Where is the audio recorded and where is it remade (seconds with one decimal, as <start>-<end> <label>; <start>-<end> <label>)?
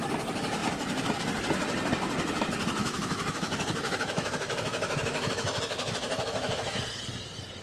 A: 0.0-2.8 recorded; 2.8-6.8 remade; 6.8-7.6 recorded